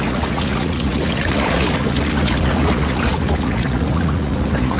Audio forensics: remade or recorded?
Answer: remade